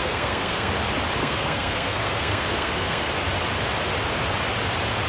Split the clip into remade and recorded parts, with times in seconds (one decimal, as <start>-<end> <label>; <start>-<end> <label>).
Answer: 0.0-0.7 remade; 0.7-1.2 recorded; 1.2-3.1 remade; 3.1-5.1 recorded